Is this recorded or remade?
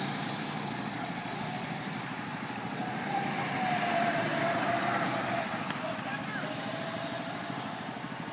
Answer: remade